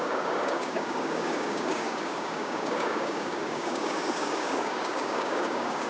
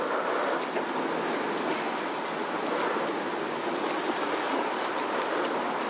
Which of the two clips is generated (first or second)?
first